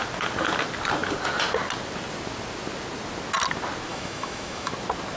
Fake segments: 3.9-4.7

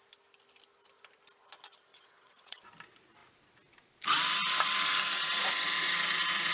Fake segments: 1.9-2.6

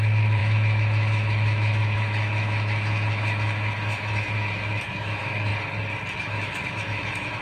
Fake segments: 0.0-5.5; 6.2-7.4

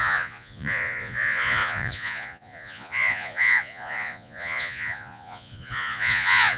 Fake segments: 0.0-6.6

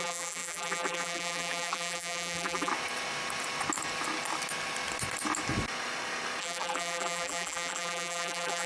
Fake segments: 0.0-2.7; 6.4-8.7

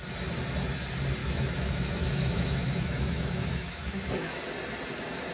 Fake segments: 1.2-4.4